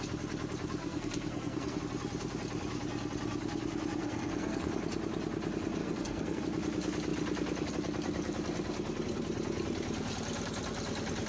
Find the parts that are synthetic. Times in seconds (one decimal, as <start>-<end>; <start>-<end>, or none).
0.8-1.8; 4.0-4.7; 5.8-6.4